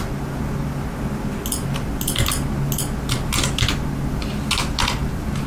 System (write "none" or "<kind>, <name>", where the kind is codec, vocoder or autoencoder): none